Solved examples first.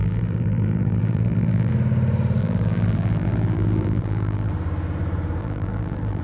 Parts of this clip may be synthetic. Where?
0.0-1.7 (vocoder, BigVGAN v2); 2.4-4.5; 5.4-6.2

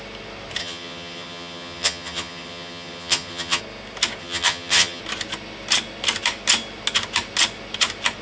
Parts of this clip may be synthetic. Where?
0.6-3.6 (vocoder, HiFi-GAN); 4.2-5.0

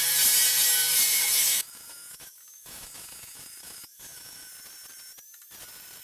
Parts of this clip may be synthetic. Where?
1.1-4.5 (autoencoder, DAC-VAE)

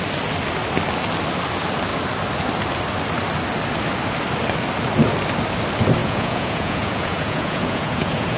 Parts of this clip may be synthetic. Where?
6.0-8.4 (vocoder, Vocos)

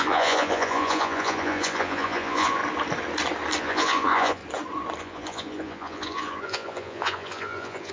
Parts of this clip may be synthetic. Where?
0.0-2.6 (vocoder, Vocos); 3.6-4.4; 5.0-7.9